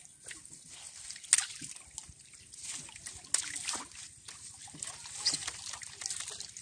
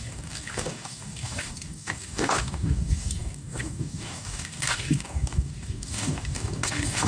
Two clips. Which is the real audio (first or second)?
first